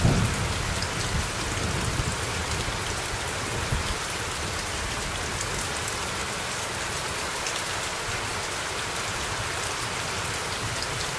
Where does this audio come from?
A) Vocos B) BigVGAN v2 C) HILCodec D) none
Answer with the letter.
D